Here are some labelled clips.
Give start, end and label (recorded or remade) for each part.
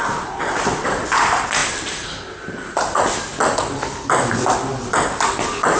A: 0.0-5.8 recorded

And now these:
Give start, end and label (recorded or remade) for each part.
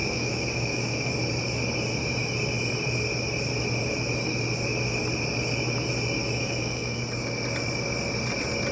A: 0.0-1.1 remade; 1.1-6.2 recorded; 6.2-7.0 remade; 7.0-8.7 recorded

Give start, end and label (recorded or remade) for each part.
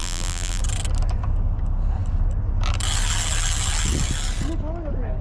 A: 0.0-0.6 remade; 0.6-5.2 recorded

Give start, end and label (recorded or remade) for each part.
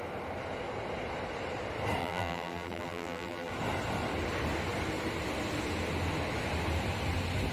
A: 0.0-2.0 recorded; 2.0-3.5 remade; 3.5-7.5 recorded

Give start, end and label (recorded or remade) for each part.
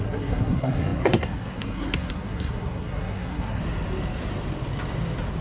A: 0.0-3.6 remade; 3.6-5.4 recorded